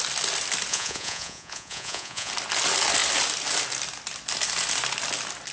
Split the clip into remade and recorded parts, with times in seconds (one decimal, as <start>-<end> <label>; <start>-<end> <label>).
0.0-0.7 recorded; 0.7-2.3 remade; 2.3-5.5 recorded